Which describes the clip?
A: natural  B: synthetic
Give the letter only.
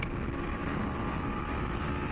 A